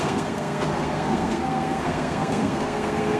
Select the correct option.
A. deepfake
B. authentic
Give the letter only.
A